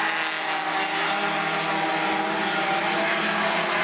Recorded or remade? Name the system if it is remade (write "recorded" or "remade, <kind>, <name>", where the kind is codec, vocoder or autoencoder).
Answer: recorded